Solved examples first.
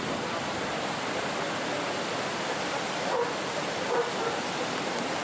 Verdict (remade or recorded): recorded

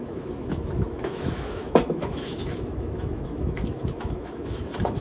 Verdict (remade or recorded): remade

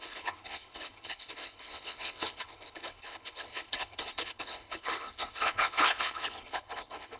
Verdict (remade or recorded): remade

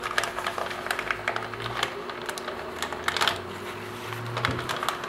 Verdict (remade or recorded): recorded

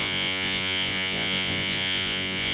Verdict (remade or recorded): remade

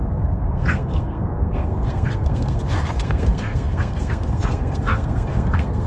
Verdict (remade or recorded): remade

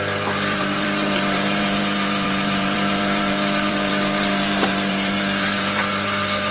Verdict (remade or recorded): remade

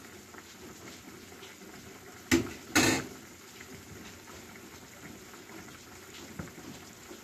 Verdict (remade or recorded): recorded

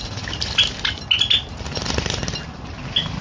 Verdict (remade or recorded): recorded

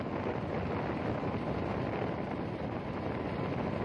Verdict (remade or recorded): recorded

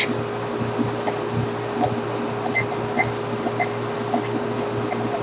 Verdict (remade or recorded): recorded